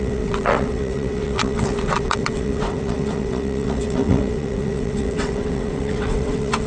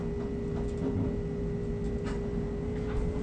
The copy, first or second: first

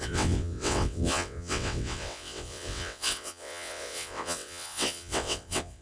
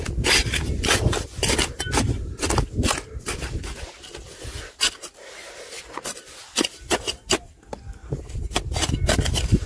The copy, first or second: first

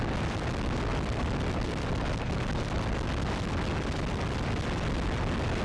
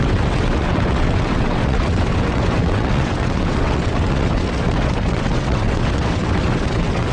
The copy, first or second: second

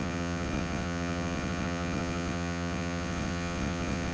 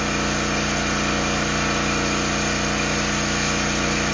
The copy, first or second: first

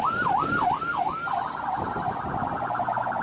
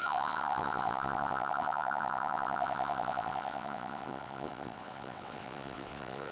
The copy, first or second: second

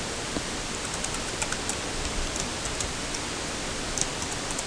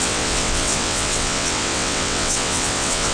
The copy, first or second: second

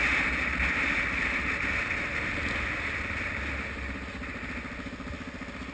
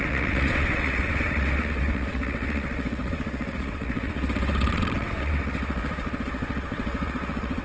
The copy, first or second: second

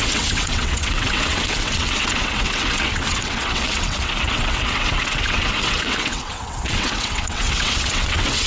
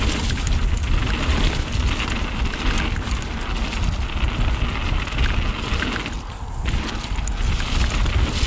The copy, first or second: first